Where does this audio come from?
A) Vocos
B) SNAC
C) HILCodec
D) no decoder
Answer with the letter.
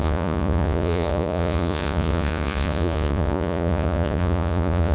A